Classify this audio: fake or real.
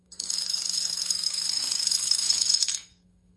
fake